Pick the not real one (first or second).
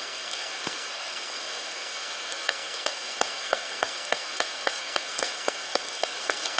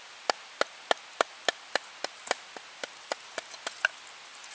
first